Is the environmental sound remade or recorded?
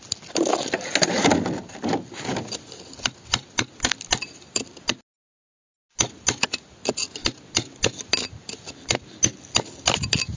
recorded